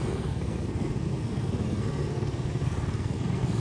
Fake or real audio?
fake